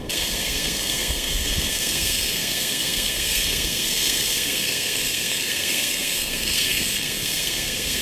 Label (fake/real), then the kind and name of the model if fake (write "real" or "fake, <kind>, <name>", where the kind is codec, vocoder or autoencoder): fake, codec, SNAC